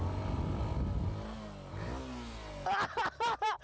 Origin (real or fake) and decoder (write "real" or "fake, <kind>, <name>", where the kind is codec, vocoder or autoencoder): real